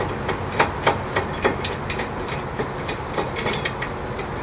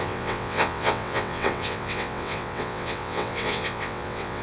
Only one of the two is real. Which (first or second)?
first